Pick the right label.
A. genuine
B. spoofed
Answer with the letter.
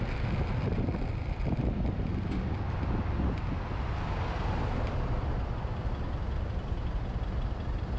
A